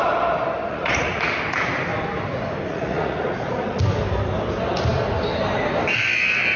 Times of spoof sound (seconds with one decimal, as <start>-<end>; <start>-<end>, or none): 0.6-1.4; 2.7-3.8